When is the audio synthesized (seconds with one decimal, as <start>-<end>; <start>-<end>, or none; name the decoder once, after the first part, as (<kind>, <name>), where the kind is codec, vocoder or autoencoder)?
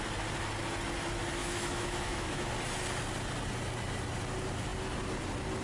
1.4-2.5 (autoencoder, DAC-VAE)